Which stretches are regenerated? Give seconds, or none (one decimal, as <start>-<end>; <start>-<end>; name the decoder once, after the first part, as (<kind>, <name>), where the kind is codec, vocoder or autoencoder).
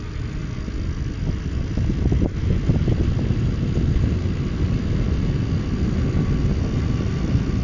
none